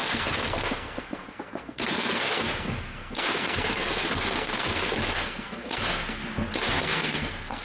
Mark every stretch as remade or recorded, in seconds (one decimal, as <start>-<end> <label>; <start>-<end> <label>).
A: 0.0-6.2 remade; 6.2-6.7 recorded; 6.7-7.6 remade